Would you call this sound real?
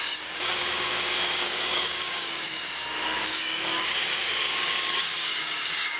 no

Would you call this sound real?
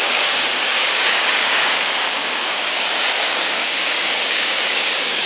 no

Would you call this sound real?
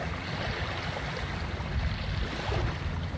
yes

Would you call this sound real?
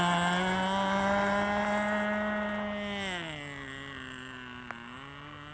yes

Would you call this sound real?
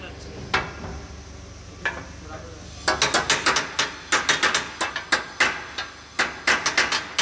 yes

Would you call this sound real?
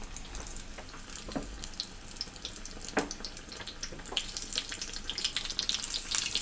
yes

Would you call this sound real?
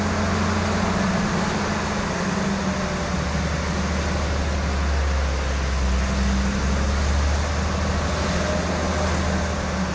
yes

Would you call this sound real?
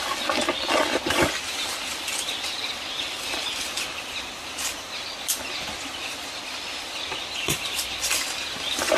yes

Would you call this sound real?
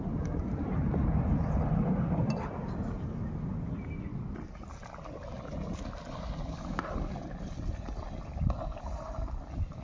yes